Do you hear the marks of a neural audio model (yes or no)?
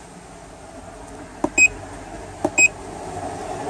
no